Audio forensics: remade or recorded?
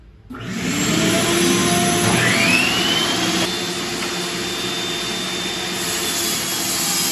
recorded